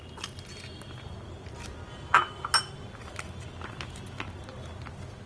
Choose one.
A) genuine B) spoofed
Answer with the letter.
A